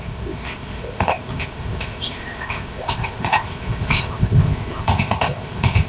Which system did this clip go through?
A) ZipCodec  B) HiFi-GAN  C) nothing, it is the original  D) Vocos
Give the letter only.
A